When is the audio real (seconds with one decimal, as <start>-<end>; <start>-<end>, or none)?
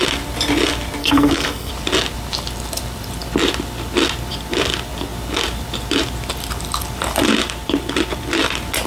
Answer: 0.0-1.0; 1.7-8.9